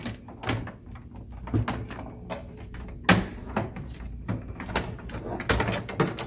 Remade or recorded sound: recorded